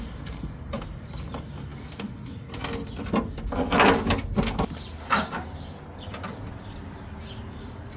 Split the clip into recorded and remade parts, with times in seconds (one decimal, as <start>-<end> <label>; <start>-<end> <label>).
0.0-8.0 recorded